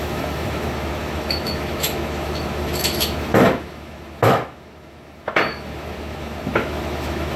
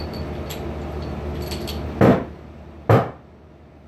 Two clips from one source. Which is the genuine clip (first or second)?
second